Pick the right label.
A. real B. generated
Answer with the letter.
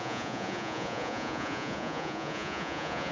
B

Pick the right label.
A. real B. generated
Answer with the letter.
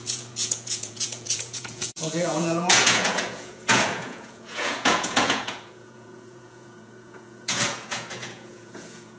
B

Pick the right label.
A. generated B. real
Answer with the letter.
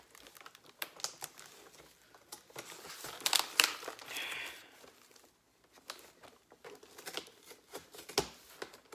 B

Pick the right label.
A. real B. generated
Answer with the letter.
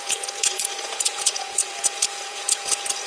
B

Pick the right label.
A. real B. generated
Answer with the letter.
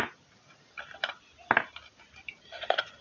A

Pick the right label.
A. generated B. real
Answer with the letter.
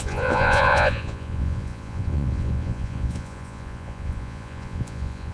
A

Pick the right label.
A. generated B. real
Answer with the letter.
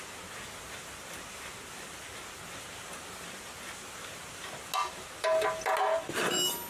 B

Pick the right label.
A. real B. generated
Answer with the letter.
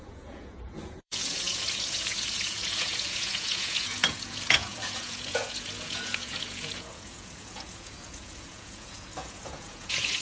B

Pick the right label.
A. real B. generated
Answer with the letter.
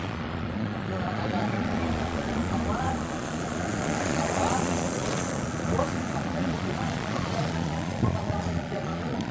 B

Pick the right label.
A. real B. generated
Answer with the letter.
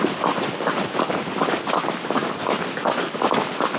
A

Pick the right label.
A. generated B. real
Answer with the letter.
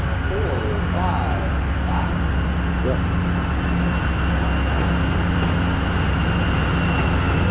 B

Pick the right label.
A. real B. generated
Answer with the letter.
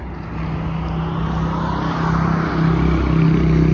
A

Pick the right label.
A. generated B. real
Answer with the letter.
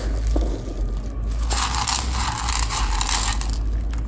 B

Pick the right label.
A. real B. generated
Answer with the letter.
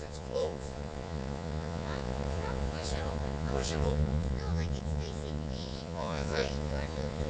B